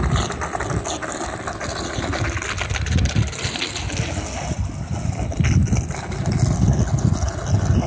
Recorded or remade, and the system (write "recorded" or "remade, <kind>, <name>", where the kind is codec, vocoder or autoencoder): recorded